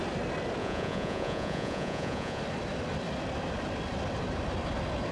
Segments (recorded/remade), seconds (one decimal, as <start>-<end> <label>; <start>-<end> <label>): 0.0-0.6 recorded; 0.6-2.4 remade; 2.4-5.1 recorded